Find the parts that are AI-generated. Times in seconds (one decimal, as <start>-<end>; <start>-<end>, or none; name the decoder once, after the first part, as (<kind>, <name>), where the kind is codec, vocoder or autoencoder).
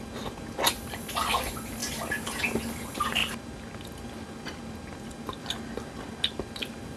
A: none